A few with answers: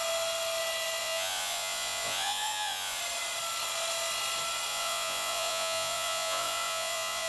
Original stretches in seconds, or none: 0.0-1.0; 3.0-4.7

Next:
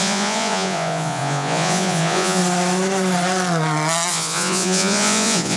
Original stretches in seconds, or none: 2.4-4.1

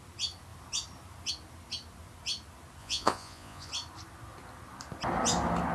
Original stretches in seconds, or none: 0.0-2.8; 3.7-5.7

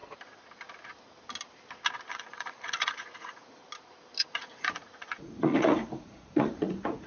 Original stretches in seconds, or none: 0.0-2.1; 3.6-4.3

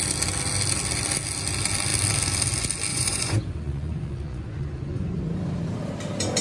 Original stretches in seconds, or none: 0.0-2.9; 5.2-6.4

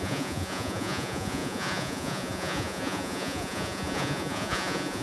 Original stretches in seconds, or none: none

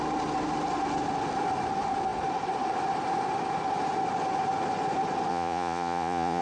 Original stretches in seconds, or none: 0.0-5.3